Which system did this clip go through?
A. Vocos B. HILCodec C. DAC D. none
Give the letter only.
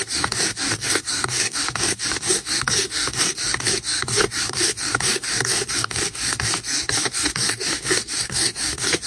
C